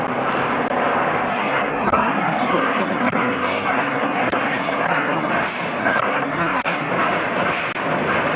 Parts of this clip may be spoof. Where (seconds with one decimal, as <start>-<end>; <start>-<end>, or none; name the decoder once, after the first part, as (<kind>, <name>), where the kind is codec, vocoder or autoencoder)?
1.3-5.3 (codec, SNAC); 5.8-6.9